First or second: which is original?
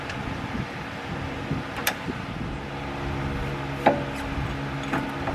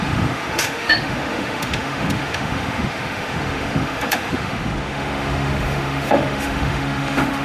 first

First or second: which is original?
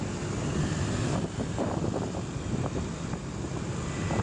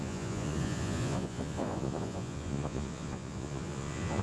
first